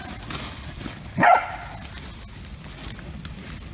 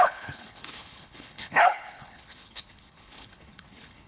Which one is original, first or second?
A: first